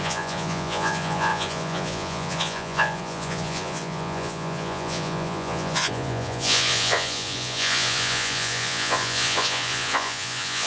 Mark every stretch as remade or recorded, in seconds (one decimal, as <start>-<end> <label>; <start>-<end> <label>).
0.0-10.7 remade